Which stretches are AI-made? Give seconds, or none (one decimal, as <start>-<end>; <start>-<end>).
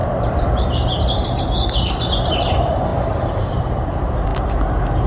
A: 0.0-4.3